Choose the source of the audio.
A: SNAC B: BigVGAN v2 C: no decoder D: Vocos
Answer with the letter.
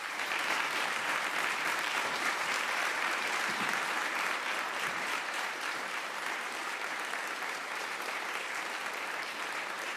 B